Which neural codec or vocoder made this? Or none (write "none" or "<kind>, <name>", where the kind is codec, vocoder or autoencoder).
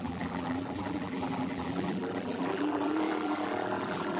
vocoder, BigVGAN v2